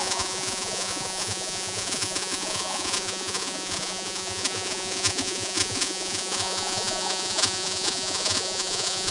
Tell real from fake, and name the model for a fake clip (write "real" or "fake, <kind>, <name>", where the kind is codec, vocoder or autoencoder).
fake, vocoder, Vocos